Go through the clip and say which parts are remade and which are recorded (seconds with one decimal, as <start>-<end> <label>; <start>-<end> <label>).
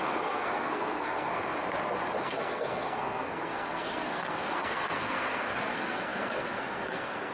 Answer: 0.0-1.5 remade; 1.5-2.2 recorded; 2.2-7.3 remade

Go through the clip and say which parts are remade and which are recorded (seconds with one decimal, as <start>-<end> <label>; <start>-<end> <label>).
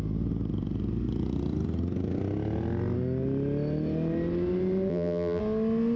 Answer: 0.0-4.9 recorded; 4.9-5.4 remade; 5.4-6.0 recorded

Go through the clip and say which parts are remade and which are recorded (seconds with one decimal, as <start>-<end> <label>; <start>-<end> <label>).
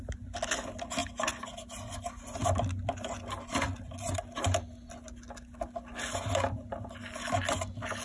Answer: 0.0-8.0 recorded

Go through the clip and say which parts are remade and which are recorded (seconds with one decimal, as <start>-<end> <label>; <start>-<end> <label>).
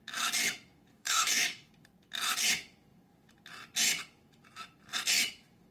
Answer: 0.0-0.9 recorded; 0.9-1.7 remade; 1.7-5.7 recorded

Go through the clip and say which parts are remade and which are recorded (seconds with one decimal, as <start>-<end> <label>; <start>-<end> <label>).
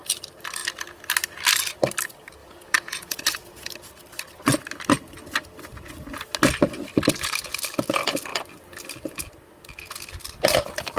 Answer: 0.0-2.4 recorded; 2.4-3.7 remade; 3.7-11.0 recorded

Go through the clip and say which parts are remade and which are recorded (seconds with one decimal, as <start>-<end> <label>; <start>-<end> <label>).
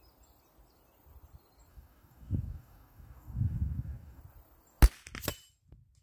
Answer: 0.0-1.7 recorded; 1.7-4.2 remade; 4.2-6.0 recorded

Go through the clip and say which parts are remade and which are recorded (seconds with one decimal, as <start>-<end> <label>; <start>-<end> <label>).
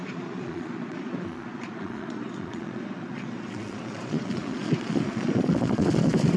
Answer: 0.0-6.4 remade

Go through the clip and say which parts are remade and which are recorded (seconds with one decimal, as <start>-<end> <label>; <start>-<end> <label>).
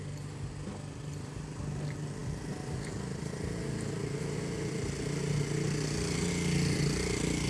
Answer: 0.0-7.5 recorded